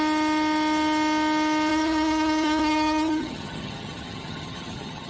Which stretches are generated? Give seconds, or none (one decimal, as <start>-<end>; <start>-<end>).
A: 1.7-5.1